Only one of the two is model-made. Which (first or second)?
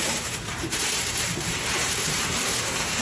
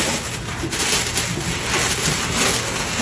first